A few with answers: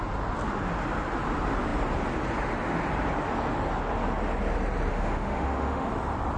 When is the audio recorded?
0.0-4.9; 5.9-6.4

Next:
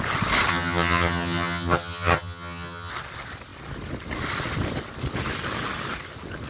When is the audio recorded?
0.0-0.5; 2.9-6.5